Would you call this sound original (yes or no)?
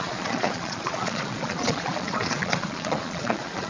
no